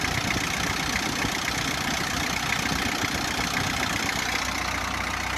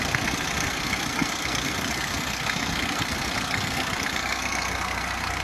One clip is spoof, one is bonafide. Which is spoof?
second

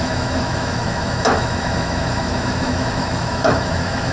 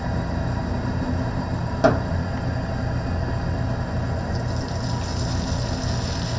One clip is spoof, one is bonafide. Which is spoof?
first